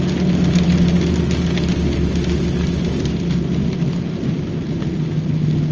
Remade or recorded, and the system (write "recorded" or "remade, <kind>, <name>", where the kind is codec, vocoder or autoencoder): recorded